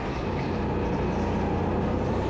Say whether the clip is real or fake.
real